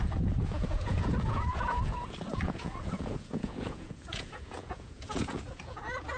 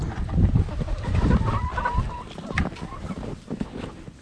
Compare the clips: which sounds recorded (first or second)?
second